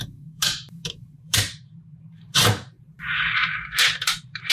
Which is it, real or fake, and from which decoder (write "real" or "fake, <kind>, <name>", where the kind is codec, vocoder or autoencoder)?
fake, vocoder, BigVGAN v2